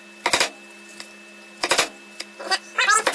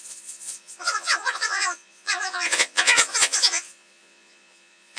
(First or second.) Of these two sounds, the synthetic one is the second